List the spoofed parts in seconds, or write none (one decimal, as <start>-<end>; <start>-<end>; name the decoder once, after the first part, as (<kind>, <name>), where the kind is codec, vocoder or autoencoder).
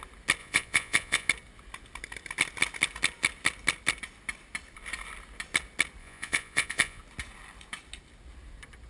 0.4-1.3 (vocoder, Vocos); 6.0-7.0